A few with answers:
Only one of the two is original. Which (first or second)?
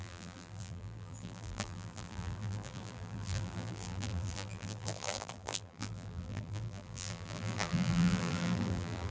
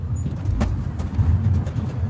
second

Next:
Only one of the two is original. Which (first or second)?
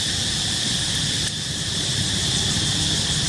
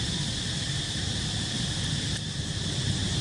first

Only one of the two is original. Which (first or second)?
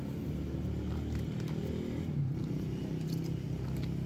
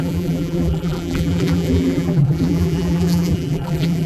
first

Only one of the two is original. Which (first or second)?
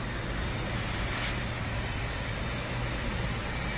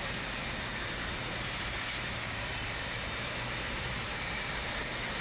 first